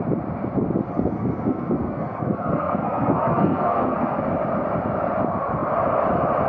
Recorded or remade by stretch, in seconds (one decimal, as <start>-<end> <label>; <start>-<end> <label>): 0.0-0.9 recorded; 0.9-4.2 remade; 4.2-6.5 recorded